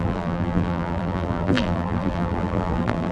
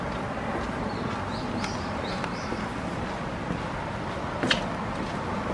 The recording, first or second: second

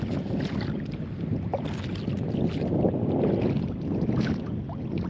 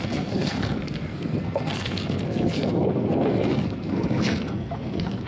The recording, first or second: first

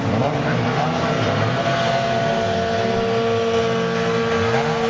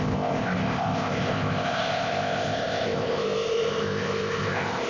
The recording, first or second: first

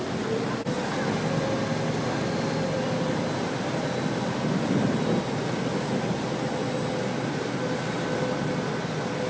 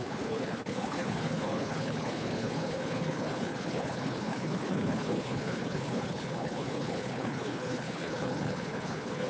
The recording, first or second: first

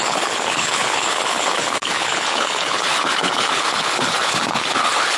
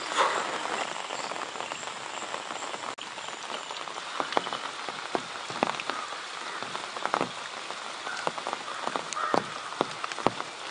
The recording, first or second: second